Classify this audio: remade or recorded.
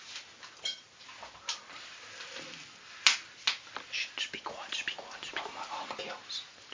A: recorded